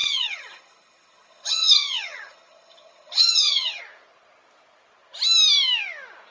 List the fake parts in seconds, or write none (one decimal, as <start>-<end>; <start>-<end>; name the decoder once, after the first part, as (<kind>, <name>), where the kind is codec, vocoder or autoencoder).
0.0-3.8 (vocoder, HiFi-GAN)